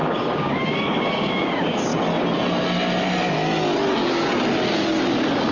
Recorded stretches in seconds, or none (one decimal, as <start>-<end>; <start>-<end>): 1.9-5.5